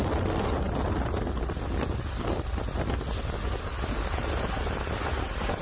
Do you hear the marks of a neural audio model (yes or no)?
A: no